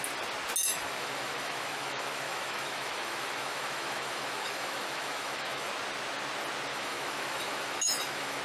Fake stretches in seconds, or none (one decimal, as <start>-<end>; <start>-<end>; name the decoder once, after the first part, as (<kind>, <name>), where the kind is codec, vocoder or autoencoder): 0.7-5.7 (autoencoder, DAC-VAE); 6.7-8.4